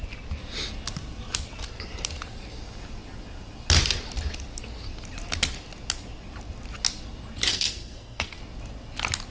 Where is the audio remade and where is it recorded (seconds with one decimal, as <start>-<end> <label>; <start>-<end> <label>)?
0.0-7.5 recorded; 7.5-8.4 remade; 8.4-9.3 recorded